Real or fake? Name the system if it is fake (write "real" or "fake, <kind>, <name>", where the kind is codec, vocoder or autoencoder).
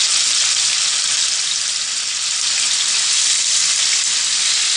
real